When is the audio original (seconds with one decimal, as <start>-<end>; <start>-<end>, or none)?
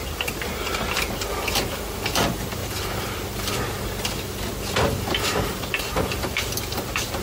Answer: 0.0-7.2